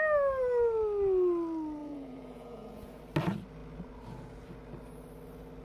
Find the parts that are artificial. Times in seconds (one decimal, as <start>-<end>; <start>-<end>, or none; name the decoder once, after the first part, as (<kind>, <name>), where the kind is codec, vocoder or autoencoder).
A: 1.8-3.0 (vocoder, Vocos)

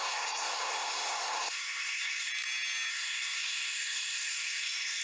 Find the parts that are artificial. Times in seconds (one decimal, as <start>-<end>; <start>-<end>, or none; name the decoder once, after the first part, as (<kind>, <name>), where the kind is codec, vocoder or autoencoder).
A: 0.0-2.3 (codec, SNAC); 2.9-5.0

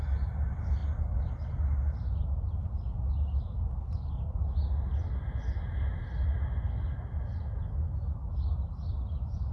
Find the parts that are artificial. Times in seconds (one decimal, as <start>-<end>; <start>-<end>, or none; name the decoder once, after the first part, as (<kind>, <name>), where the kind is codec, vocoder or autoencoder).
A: none

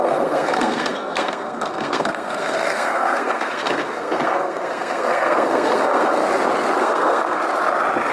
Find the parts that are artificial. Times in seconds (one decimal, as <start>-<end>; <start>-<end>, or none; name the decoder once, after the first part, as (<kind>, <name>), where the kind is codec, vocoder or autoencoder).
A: 0.0-6.2 (codec, SNAC); 6.8-7.4

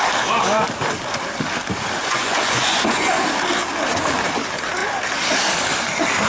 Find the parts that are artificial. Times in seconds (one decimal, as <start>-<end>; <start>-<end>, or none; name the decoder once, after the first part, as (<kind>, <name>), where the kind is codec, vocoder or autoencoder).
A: 2.0-3.2 (vocoder, Vocos)

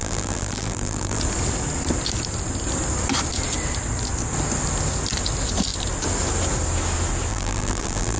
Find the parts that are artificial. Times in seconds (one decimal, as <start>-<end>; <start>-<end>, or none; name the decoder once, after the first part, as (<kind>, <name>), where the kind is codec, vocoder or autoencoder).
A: 0.0-1.2 (vocoder, BigVGAN v2); 7.3-8.2

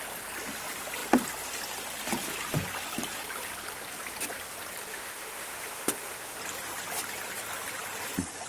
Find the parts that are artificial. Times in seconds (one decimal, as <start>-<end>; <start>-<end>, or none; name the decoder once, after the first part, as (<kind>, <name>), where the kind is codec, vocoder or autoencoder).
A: 4.9-6.4 (autoencoder, DAC-VAE)